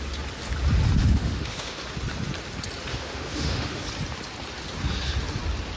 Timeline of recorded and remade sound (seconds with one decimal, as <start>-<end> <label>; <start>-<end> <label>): 0.0-1.0 recorded; 1.0-1.8 remade; 1.8-2.9 recorded; 2.9-3.8 remade; 3.8-5.8 recorded